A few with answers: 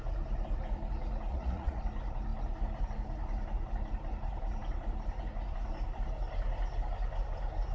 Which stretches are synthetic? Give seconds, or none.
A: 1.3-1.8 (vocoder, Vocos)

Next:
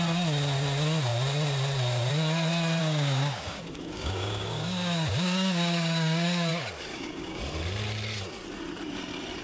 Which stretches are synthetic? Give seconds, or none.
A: 2.8-6.5 (codec, DAC); 6.9-7.4

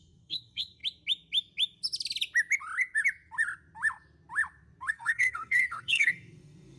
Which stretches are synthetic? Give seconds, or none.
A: 0.0-0.8 (codec, SNAC); 4.9-6.8